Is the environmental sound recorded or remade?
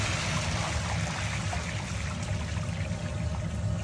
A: recorded